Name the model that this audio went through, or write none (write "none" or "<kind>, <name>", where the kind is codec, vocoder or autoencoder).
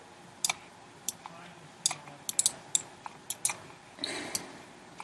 none